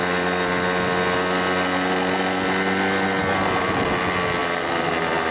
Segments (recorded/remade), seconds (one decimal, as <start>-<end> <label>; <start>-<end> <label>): 0.0-5.3 recorded